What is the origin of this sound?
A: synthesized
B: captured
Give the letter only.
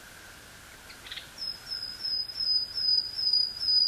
B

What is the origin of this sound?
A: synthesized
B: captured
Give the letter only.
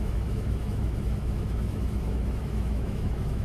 A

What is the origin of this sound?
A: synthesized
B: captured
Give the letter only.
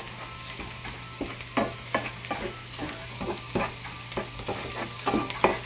B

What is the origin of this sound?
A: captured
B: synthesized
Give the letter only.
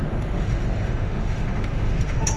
B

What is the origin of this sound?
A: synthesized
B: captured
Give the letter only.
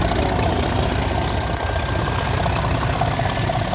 B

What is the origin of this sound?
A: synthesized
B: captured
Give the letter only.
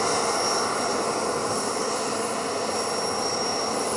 B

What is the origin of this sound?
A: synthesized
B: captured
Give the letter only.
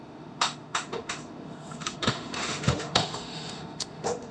A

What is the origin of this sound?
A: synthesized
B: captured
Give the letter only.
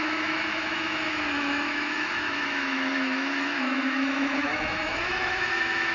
A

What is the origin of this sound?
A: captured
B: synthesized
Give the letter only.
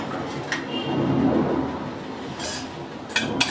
A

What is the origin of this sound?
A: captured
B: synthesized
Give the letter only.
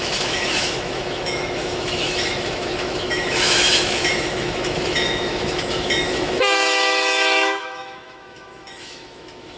B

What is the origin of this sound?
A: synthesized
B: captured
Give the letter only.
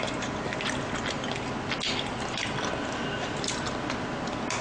B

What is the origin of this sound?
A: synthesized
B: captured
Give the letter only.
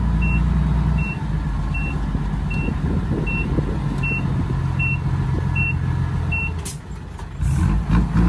B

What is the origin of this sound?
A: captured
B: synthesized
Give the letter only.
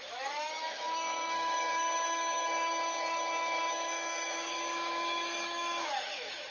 B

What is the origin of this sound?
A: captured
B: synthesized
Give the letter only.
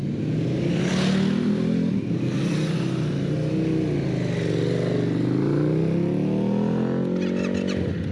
A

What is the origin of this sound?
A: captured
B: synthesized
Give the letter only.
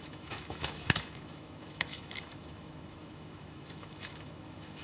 B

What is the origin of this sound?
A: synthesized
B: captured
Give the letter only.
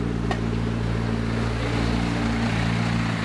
B